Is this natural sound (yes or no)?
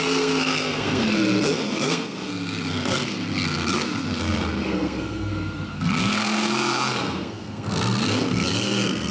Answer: no